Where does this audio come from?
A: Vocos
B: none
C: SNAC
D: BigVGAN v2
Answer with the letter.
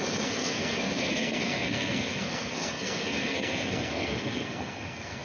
C